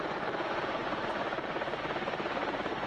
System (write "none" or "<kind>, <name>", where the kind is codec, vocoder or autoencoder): vocoder, Vocos